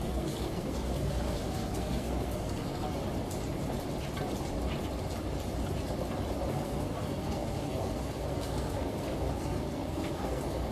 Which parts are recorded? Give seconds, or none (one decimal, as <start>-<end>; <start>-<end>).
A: 3.0-6.5